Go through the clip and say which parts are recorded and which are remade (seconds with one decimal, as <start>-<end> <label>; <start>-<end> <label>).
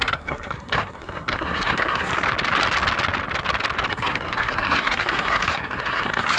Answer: 0.0-2.1 remade; 2.1-3.9 recorded; 3.9-6.4 remade